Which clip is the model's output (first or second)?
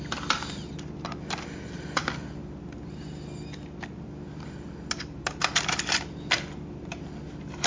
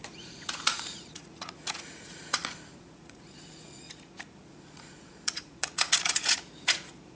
second